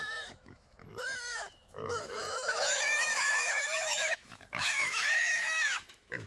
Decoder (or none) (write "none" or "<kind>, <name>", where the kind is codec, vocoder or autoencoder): autoencoder, DAC-VAE